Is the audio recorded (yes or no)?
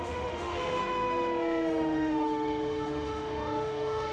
no